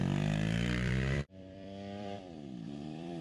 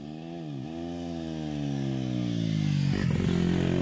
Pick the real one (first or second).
second